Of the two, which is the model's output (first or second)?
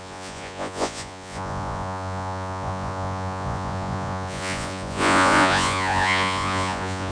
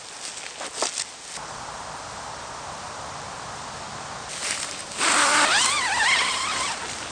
first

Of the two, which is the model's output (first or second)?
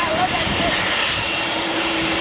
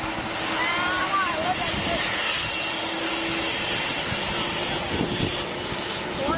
first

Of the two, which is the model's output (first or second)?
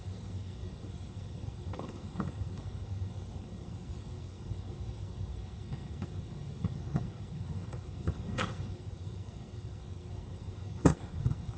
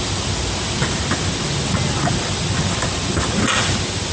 first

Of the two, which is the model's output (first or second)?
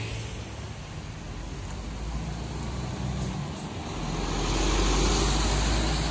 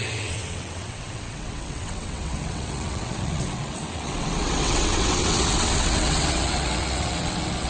second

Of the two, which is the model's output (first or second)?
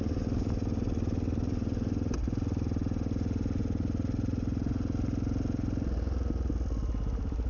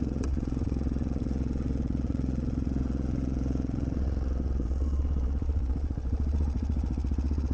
second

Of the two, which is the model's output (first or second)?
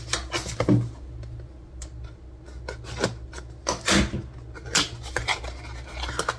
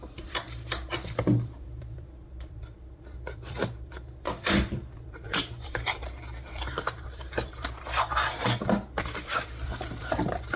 second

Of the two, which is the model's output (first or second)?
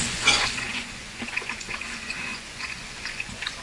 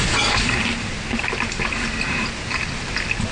first